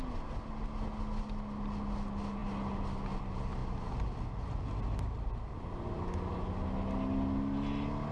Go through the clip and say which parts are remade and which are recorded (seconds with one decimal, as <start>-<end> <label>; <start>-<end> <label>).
0.0-8.1 recorded